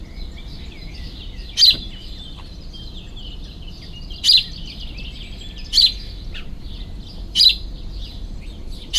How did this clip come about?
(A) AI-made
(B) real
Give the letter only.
B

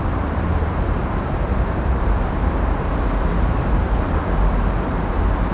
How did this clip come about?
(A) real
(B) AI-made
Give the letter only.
B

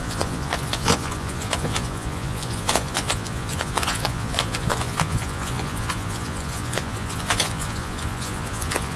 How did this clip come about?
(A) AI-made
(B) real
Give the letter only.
A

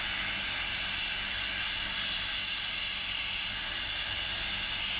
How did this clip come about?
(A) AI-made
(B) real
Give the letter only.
B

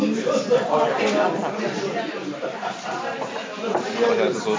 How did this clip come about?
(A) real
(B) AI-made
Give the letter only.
B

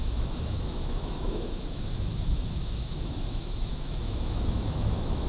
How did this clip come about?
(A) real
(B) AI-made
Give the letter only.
B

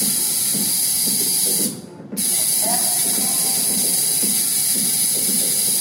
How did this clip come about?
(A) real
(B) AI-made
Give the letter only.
A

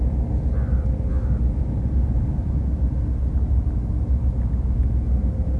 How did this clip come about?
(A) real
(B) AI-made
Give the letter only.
A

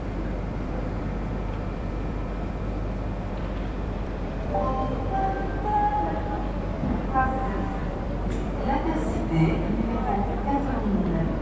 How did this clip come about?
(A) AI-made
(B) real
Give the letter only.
A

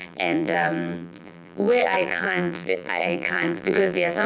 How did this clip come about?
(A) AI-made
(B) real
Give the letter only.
A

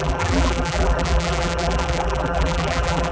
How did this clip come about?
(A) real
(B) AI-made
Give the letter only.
B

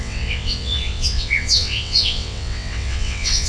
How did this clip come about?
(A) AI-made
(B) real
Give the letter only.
A